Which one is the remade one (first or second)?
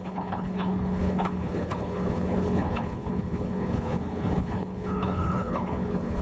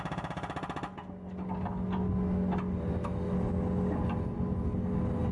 first